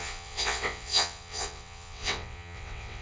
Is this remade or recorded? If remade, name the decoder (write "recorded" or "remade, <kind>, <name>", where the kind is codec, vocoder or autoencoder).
remade, vocoder, WaveNeXt